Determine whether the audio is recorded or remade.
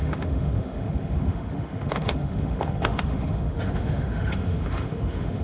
remade